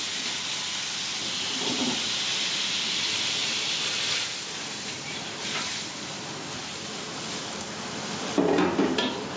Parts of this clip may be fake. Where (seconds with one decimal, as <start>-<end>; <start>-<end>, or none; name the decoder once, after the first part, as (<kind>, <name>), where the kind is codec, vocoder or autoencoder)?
3.4-7.7 (vocoder, BigVGAN v2)